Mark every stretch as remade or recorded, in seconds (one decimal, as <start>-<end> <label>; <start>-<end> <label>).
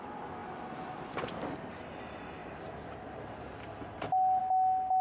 0.0-5.0 recorded